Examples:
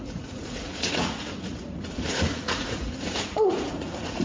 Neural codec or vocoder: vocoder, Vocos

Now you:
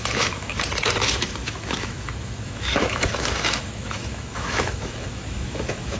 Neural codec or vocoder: autoencoder, DAC-VAE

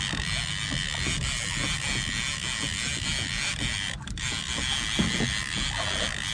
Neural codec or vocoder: none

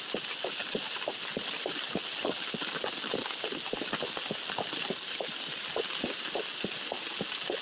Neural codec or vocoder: none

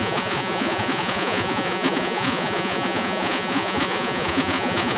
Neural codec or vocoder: vocoder, Vocos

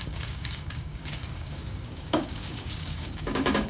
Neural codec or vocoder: codec, DAC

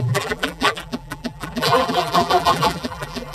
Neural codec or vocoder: vocoder, BigVGAN v2